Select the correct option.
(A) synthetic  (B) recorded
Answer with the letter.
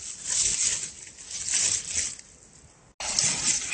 B